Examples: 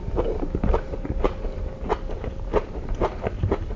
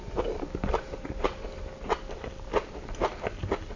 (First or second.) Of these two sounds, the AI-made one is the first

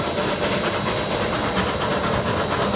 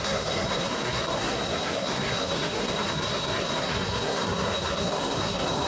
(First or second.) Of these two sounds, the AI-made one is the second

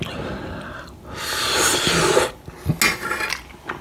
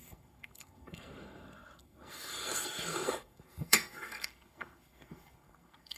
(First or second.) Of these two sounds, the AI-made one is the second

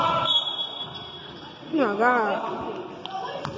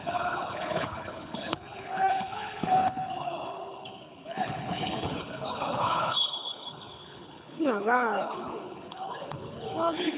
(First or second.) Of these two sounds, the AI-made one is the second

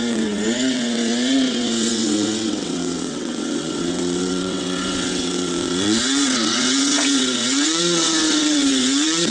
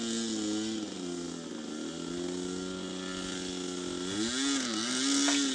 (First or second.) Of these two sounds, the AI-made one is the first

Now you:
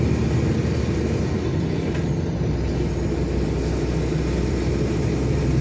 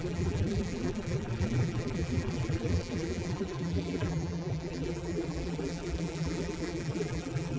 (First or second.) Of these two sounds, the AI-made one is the second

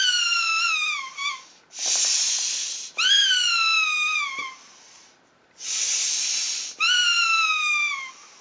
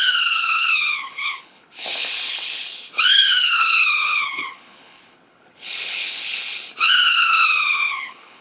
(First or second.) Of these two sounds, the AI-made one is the second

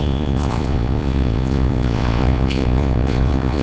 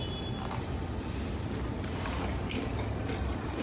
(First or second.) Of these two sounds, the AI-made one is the first